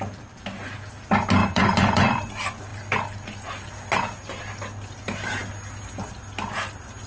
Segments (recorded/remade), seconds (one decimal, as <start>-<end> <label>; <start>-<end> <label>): 0.0-1.4 recorded; 1.4-2.3 remade; 2.3-2.7 recorded; 2.7-3.9 remade; 3.9-7.1 recorded